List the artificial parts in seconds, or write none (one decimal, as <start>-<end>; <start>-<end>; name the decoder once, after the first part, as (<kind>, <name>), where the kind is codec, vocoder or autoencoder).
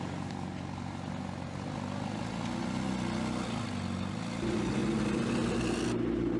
none